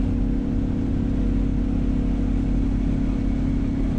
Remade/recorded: recorded